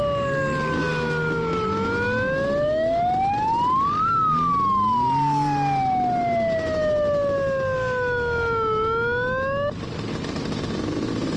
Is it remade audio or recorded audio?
recorded